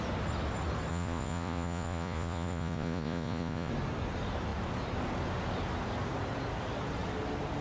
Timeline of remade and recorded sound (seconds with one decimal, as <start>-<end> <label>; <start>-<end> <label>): 0.0-0.9 recorded; 0.9-3.7 remade; 3.7-7.6 recorded